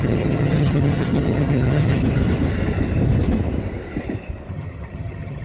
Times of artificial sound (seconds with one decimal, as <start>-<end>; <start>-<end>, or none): 0.0-2.0; 4.5-5.4